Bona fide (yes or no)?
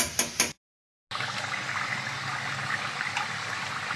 yes